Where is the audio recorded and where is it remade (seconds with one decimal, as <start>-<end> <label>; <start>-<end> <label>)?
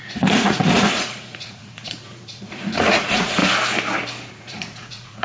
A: 0.0-3.4 remade; 3.4-4.3 recorded; 4.3-5.2 remade